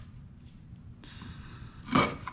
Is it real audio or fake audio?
real